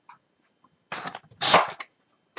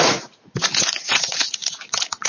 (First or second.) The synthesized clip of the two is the second